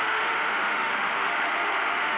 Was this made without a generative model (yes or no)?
no